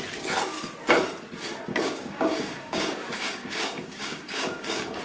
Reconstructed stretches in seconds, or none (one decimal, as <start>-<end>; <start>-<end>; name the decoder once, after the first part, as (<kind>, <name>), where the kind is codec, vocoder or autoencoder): 1.7-5.0 (codec, DAC)